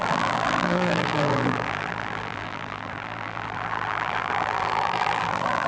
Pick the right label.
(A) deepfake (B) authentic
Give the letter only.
A